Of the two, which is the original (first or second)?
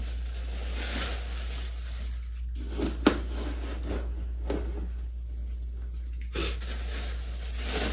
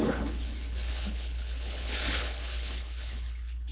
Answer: first